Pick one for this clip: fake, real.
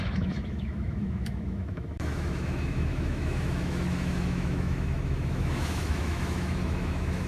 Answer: fake